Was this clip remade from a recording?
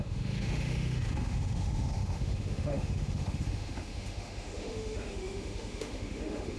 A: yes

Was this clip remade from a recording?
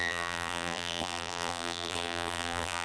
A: yes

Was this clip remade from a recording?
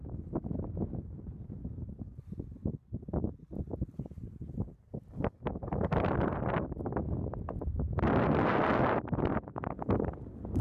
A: no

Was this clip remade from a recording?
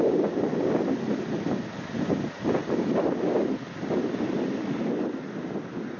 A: no